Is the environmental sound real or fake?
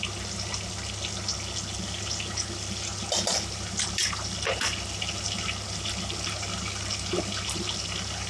real